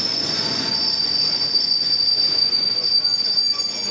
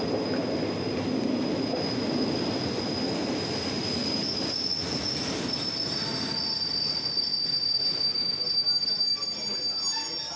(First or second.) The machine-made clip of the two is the first